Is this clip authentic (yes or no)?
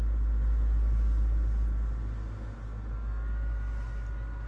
yes